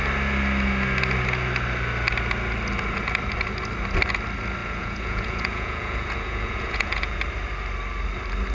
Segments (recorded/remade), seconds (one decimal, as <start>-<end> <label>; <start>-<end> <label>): 0.0-4.6 recorded; 4.6-7.2 remade; 7.2-8.5 recorded